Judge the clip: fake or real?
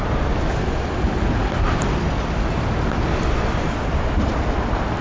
real